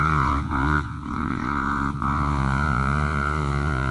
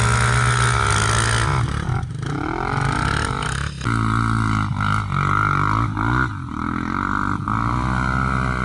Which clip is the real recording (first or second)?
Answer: second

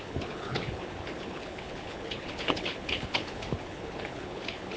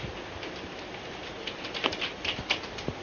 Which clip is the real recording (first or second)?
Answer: second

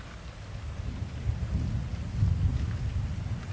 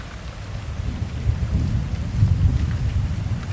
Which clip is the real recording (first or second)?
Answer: first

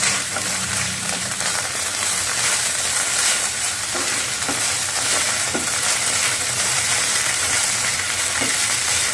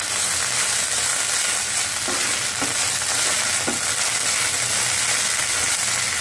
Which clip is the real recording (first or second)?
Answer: second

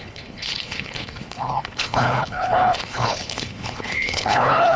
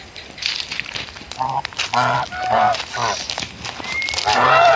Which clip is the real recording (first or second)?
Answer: second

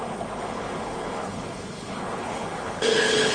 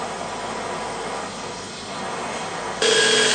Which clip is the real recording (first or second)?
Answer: second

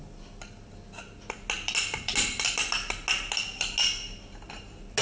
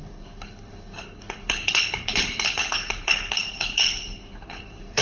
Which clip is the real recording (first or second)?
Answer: first